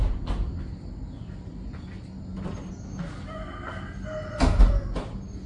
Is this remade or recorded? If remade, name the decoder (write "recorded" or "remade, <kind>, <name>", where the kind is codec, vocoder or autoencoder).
recorded